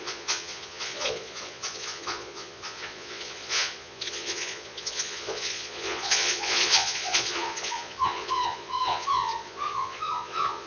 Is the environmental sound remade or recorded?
remade